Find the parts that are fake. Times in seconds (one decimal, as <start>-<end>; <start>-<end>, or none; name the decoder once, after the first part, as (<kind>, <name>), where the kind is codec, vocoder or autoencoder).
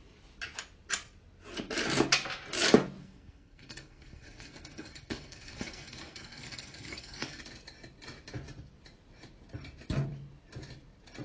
3.0-7.4 (codec, SNAC)